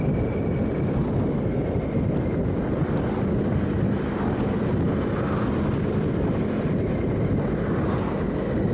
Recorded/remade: recorded